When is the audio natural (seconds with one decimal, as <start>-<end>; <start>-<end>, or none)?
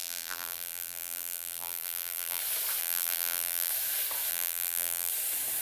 2.4-2.8; 3.7-4.3; 5.1-5.6